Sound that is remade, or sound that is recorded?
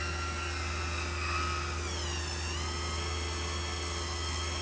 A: recorded